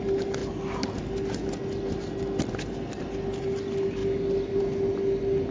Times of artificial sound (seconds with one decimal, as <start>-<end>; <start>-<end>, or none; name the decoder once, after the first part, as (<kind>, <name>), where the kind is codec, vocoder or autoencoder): none